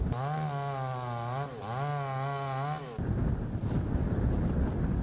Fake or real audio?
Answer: real